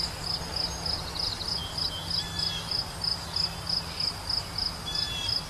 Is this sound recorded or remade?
recorded